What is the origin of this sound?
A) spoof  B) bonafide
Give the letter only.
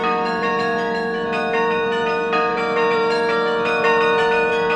A